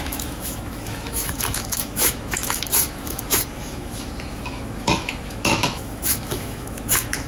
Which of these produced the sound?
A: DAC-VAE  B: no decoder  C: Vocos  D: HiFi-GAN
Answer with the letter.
A